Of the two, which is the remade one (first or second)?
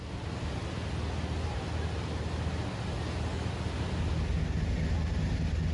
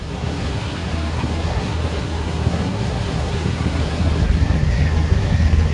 second